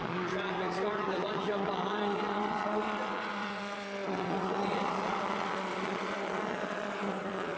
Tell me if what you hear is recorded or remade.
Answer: remade